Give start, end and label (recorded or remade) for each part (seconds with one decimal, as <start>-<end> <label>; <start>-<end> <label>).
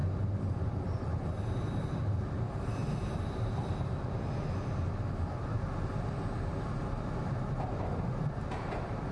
0.0-9.1 recorded